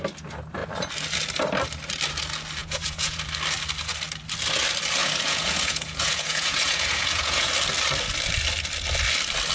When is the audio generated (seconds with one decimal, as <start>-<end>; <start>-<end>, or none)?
2.6-3.2; 5.0-7.5